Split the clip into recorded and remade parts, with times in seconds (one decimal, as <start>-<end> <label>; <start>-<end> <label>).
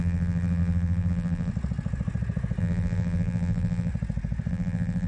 0.0-1.5 remade; 1.5-2.6 recorded; 2.6-3.9 remade; 3.9-4.5 recorded; 4.5-5.1 remade